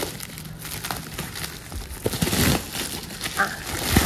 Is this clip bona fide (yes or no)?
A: yes